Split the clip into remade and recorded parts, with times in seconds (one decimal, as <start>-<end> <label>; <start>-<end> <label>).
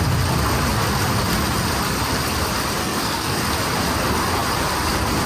0.0-2.8 recorded; 2.8-3.4 remade; 3.4-5.3 recorded